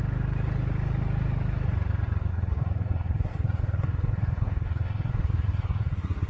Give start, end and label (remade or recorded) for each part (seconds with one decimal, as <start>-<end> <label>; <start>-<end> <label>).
0.0-2.3 recorded; 2.3-6.3 remade